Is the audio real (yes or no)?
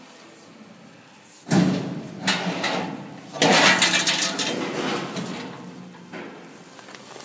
yes